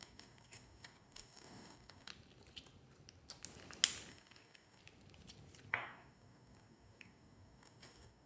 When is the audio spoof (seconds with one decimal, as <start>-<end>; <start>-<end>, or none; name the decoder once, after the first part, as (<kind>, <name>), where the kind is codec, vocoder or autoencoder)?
0.0-2.1 (codec, DAC); 4.1-4.8; 5.7-8.3